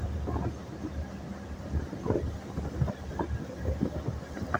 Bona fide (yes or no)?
yes